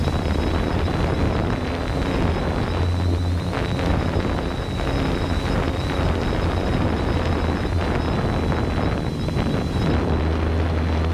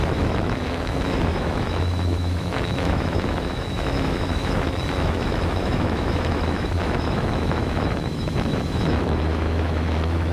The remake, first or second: second